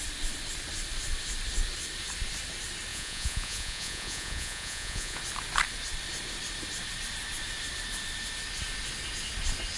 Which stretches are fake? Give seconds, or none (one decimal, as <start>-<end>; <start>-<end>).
2.9-5.2